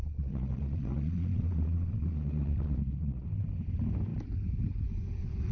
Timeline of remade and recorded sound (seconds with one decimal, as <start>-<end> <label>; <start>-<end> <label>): 0.0-3.3 remade; 3.3-5.5 recorded